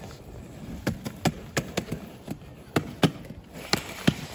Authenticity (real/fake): real